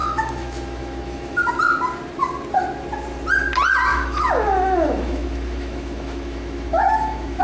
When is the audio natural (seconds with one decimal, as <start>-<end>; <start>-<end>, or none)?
1.5-3.9